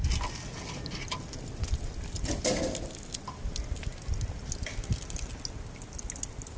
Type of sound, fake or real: real